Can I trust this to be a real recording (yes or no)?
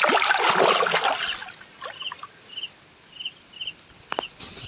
yes